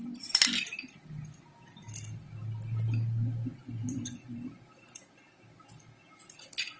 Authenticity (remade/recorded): recorded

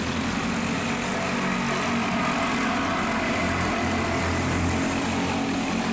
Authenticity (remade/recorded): recorded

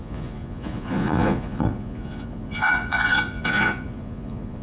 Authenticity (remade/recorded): remade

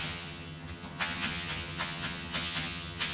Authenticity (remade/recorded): remade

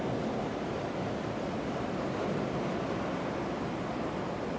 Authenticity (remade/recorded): recorded